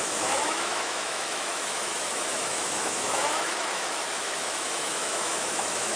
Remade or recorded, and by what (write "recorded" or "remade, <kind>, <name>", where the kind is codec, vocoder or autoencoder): remade, autoencoder, DAC-VAE